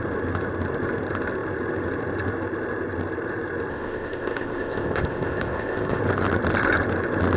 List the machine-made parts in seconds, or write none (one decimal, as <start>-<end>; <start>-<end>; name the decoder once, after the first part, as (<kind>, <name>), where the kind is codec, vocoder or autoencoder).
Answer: 3.7-6.0 (codec, ZipCodec)